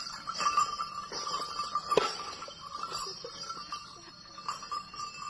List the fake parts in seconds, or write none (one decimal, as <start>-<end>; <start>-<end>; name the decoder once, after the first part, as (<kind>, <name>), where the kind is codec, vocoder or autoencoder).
none